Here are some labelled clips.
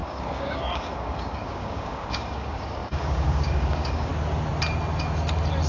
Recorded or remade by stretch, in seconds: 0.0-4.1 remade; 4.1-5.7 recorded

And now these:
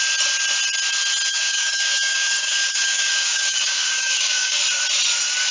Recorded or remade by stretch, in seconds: 0.0-1.3 recorded; 1.3-4.6 remade; 4.6-5.5 recorded

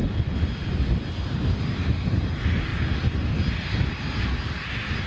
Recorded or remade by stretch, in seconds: 0.0-5.1 recorded

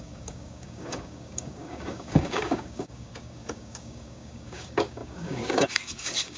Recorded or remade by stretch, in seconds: 0.0-6.4 remade

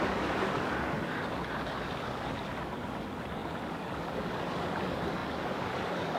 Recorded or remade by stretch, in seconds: 0.0-6.2 remade

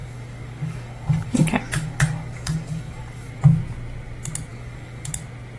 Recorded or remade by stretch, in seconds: 0.0-3.4 remade; 3.4-4.5 recorded; 4.5-5.1 remade; 5.1-5.6 recorded

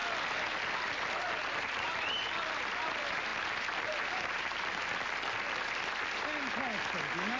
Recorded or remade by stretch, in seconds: 0.0-7.4 recorded